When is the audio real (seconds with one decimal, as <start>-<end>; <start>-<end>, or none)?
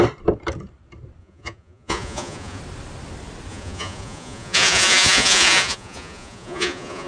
0.0-1.2; 2.6-3.5